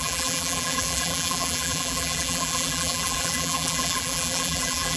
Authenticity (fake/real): fake